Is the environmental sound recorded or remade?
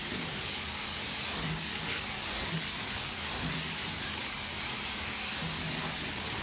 remade